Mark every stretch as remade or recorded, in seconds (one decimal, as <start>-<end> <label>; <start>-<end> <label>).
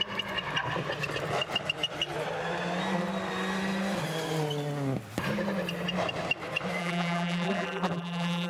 0.0-6.8 recorded; 6.8-8.5 remade